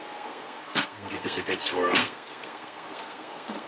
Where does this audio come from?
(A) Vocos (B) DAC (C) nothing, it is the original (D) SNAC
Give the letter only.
D